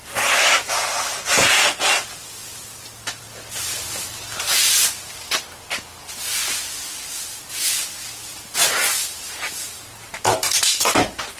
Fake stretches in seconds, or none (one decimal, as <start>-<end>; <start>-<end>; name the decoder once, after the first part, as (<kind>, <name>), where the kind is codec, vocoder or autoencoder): 8.9-9.8 (vocoder, BigVGAN v2)